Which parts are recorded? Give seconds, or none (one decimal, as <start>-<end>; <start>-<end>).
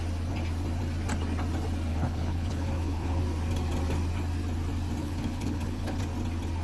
0.0-1.9; 3.2-5.0; 6.0-6.6